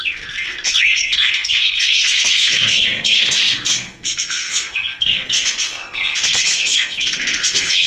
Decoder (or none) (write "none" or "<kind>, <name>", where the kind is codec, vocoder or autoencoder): codec, SNAC